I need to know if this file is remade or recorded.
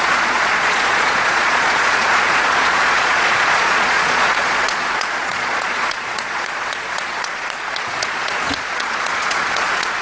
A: remade